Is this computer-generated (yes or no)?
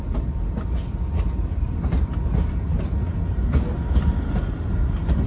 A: no